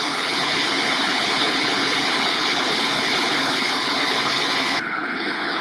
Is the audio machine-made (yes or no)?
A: yes